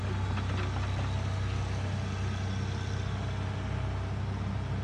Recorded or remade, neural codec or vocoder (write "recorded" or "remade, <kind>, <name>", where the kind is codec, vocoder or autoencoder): recorded